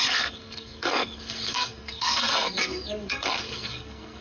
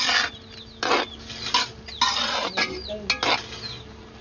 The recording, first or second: second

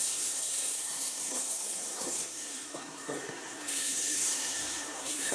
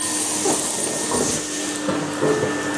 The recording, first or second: second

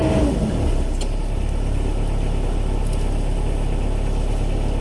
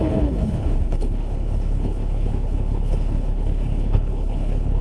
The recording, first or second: first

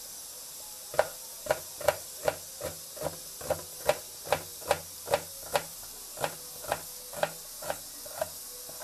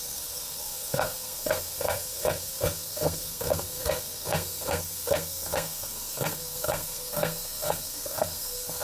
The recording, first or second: first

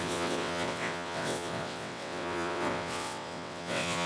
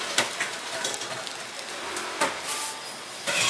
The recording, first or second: second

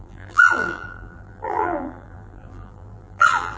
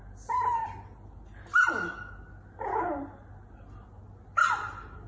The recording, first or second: second